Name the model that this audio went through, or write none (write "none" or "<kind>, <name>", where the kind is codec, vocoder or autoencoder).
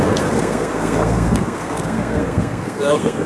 codec, SNAC